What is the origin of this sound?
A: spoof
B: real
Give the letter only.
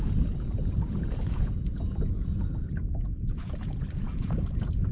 A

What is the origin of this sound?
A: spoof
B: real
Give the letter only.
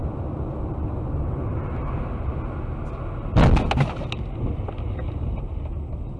B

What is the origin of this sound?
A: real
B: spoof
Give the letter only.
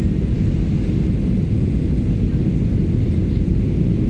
A